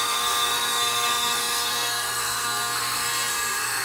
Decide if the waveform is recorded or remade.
remade